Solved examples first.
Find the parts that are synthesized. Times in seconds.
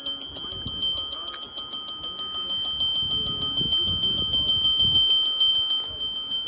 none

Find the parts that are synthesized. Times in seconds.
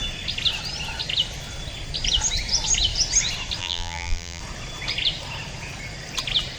3.6-4.4 (vocoder, BigVGAN v2)